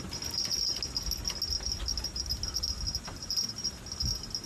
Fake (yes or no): no